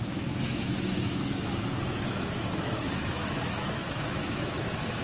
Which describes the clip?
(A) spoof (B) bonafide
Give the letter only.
A